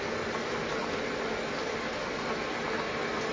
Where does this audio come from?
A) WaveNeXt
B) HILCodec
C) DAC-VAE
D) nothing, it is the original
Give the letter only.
D